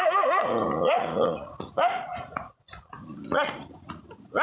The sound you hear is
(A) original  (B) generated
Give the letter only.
B